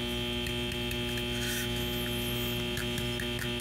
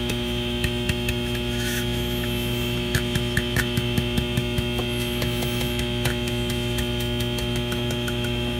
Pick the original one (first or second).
first